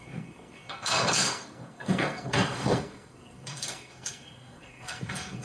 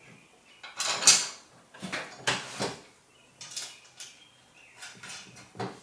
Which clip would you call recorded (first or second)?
second